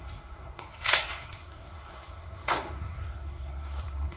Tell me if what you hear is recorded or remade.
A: remade